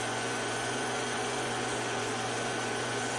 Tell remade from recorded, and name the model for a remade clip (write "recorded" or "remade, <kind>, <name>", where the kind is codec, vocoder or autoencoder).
remade, vocoder, Vocos